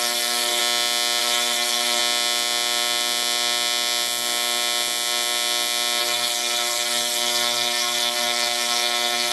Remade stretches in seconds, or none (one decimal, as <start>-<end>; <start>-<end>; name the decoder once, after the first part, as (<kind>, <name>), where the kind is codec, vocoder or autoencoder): 0.0-0.6 (codec, SNAC); 1.2-2.0; 6.0-9.3

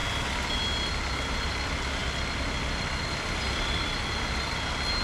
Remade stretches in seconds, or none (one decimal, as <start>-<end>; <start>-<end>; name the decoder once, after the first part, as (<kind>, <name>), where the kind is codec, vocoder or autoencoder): none

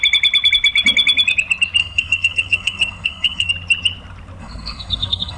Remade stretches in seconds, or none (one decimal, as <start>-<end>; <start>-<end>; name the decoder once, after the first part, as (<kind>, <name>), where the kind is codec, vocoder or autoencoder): 1.8-3.5 (codec, SNAC); 4.4-5.4

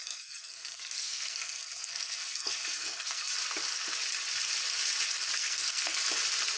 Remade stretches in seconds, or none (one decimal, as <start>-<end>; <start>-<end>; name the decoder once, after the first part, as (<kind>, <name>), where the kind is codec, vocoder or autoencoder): 0.0-3.3 (codec, SNAC); 5.4-6.0